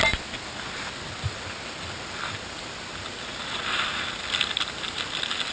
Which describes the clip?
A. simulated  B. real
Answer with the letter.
B